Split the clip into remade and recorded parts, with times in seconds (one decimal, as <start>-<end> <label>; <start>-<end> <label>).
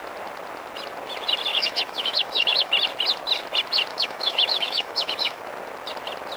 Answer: 0.0-1.5 recorded; 1.5-2.7 remade; 2.7-3.9 recorded; 3.9-5.4 remade; 5.4-6.4 recorded